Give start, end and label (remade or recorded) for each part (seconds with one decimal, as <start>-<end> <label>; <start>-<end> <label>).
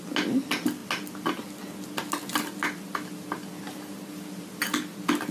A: 0.0-5.3 recorded